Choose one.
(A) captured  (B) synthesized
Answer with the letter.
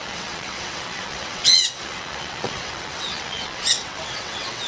B